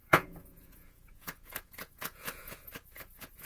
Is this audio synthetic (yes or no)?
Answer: yes